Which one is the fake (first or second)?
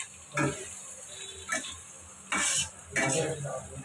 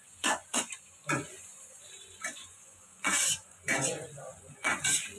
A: second